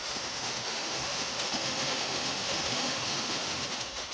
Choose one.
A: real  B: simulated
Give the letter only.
B